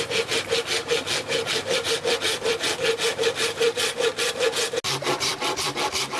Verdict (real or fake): real